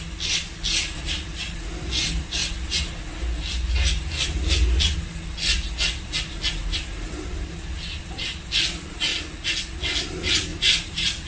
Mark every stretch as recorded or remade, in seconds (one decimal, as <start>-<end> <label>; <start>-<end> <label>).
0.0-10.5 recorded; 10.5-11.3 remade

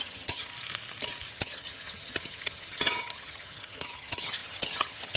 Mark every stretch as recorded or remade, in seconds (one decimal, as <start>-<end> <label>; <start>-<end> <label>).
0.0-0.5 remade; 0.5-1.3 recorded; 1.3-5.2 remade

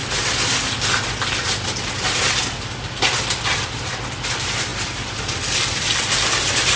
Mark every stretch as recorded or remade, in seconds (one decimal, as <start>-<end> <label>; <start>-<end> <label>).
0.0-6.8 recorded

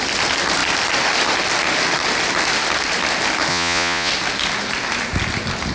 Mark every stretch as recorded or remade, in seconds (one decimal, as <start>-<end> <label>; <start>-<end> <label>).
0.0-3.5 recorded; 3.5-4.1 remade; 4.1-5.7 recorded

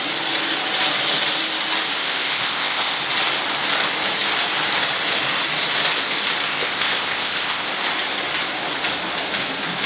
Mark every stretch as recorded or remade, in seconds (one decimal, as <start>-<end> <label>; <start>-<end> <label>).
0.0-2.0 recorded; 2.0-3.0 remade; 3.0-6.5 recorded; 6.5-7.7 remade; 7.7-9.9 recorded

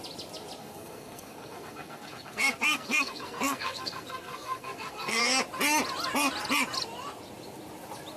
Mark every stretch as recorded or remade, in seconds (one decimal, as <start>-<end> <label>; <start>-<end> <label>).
0.0-0.6 recorded; 0.6-5.2 remade; 5.2-8.2 recorded